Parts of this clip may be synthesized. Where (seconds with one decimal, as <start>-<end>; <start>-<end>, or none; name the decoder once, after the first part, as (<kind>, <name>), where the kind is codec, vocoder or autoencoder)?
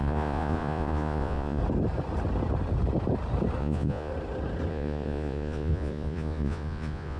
0.0-1.6 (vocoder, Vocos); 3.6-4.1; 4.7-7.2